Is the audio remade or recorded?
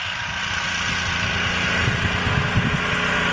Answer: recorded